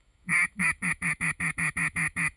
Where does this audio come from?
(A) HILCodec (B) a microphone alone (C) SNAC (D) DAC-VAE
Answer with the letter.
D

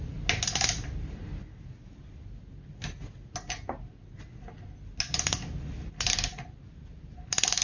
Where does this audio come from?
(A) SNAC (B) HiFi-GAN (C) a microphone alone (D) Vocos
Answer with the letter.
C